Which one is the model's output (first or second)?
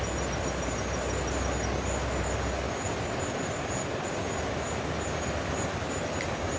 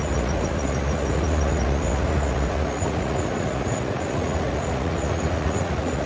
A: second